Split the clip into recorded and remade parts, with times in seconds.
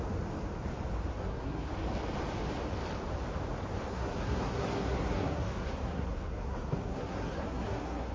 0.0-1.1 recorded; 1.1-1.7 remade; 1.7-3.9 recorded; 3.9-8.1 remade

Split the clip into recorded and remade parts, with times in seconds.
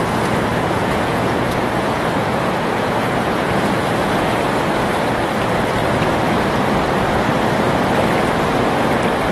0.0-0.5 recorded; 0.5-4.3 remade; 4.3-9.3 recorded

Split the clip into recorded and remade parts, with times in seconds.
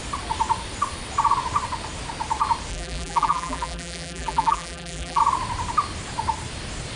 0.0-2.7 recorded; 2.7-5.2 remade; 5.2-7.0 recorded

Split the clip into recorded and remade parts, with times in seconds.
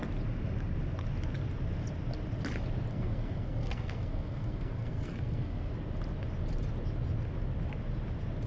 0.0-2.9 recorded; 2.9-5.7 remade; 5.7-8.5 recorded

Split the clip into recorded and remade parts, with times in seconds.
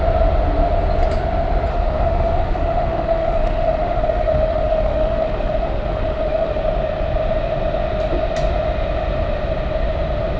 0.0-1.7 recorded; 1.7-6.6 remade; 6.6-10.4 recorded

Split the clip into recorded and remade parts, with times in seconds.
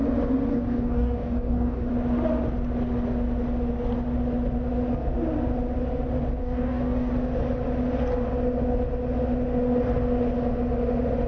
0.0-0.5 recorded; 0.5-1.9 remade; 1.9-6.4 recorded; 6.4-7.1 remade; 7.1-11.3 recorded